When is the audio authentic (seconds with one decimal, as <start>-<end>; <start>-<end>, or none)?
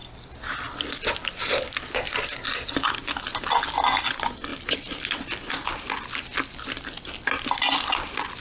0.0-8.4